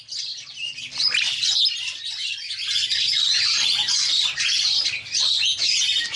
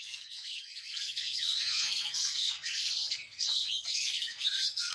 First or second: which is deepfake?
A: second